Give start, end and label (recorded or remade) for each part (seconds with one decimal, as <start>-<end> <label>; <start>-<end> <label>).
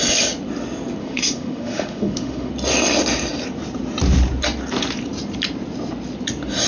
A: 0.0-1.0 recorded; 1.0-2.5 remade; 2.5-6.7 recorded